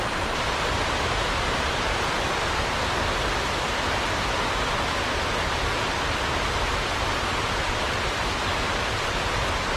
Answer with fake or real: real